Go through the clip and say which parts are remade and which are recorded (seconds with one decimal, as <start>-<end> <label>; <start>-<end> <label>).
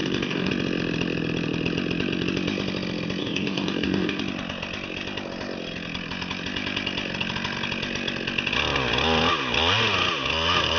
0.0-0.5 remade; 0.5-3.2 recorded; 3.2-4.2 remade; 4.2-10.8 recorded